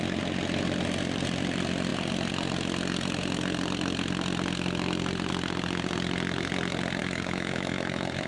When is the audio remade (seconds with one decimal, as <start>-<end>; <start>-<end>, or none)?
7.0-8.3